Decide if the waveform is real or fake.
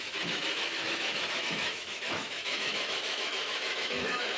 fake